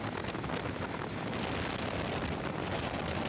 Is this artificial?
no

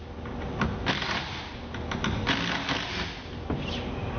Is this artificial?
no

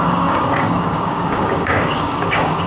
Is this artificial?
yes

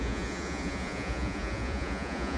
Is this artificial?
yes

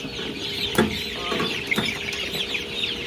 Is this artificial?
yes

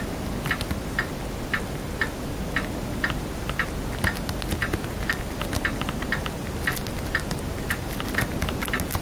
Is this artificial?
no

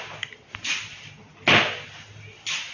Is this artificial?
no